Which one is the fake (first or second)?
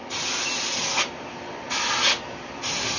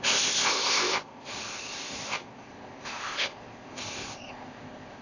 second